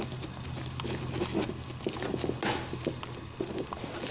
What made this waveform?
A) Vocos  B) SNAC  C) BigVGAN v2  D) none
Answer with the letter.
D